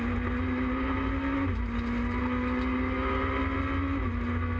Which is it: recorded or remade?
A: recorded